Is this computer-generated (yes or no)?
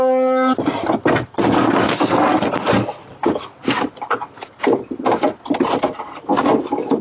no